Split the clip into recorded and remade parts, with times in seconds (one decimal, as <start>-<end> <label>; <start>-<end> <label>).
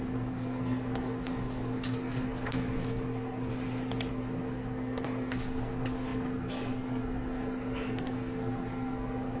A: 0.0-3.5 remade; 3.5-4.1 recorded; 4.1-9.4 remade